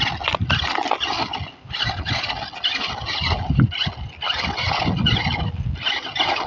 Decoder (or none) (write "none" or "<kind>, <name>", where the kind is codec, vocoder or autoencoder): none